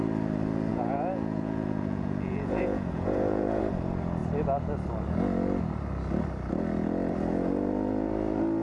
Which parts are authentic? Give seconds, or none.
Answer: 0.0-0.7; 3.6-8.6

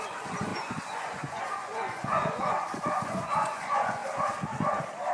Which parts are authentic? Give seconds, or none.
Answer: 4.0-5.1

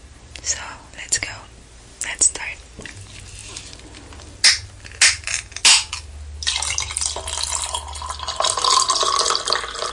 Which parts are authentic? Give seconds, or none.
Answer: 0.0-9.9

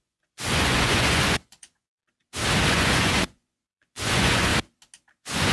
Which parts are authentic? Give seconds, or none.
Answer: 2.0-2.7; 4.5-5.1

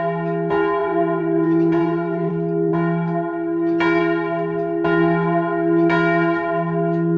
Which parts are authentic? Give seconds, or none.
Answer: 0.0-0.8; 2.3-7.2

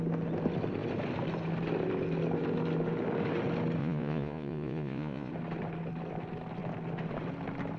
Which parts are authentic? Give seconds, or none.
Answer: 0.0-3.8; 5.3-7.8

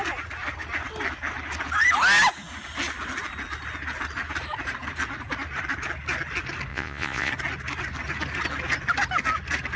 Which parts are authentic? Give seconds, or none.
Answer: 0.0-6.7; 7.3-9.8